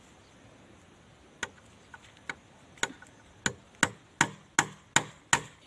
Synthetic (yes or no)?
no